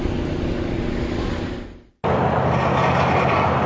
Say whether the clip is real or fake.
real